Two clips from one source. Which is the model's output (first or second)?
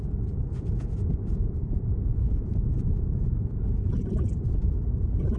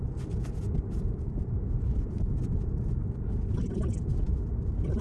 first